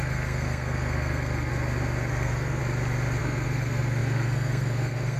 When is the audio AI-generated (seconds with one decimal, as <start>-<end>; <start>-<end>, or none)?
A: 0.0-1.5; 2.1-2.6; 3.2-5.2